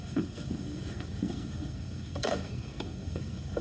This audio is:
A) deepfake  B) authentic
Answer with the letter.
A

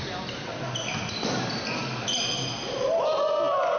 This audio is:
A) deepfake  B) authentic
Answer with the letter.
B